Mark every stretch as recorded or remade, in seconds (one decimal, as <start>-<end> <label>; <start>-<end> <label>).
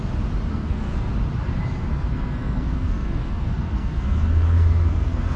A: 0.0-0.5 recorded; 0.5-1.1 remade; 1.1-1.9 recorded; 1.9-5.4 remade